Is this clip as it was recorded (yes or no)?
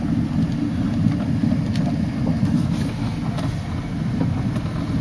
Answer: yes